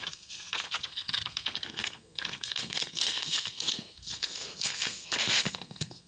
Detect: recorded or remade remade